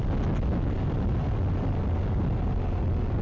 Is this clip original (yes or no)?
yes